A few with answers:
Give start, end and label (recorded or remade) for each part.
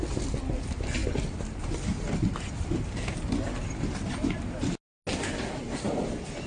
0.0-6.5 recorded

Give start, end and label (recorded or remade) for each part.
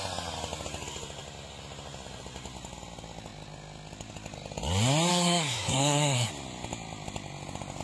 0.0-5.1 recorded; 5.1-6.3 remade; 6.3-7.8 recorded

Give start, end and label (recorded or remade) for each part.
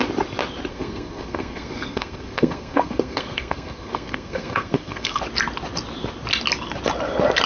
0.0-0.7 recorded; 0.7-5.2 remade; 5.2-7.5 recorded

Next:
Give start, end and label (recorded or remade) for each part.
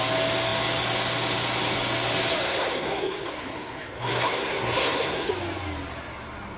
0.0-2.4 recorded; 2.4-5.3 remade; 5.3-6.6 recorded